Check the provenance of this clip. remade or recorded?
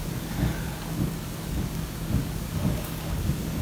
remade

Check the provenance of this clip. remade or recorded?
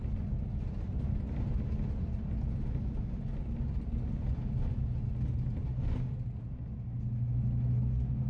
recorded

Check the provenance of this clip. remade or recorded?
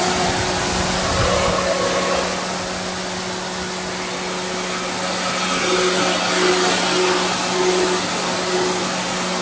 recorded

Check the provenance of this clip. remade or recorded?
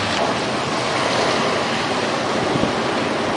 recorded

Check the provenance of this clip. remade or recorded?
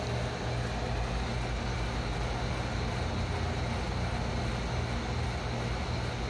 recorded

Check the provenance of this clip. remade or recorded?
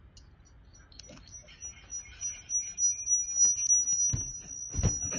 recorded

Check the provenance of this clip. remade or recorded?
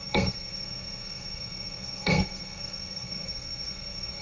remade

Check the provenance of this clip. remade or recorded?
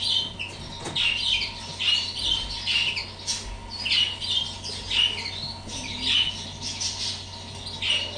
recorded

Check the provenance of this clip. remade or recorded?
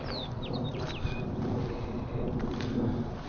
remade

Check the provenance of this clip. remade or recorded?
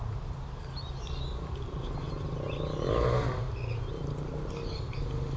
recorded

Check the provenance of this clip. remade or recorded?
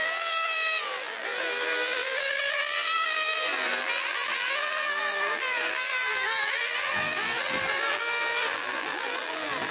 remade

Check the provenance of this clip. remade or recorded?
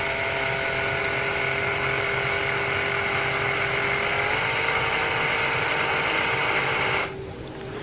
recorded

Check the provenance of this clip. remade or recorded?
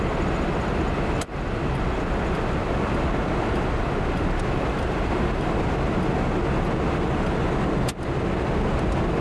recorded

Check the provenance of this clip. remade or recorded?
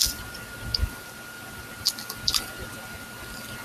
recorded